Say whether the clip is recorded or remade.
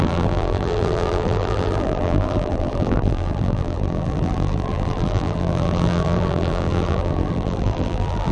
remade